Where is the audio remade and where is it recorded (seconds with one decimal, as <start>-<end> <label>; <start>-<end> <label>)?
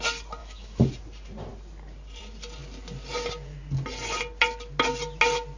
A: 0.0-0.4 recorded; 0.4-0.9 remade; 0.9-5.6 recorded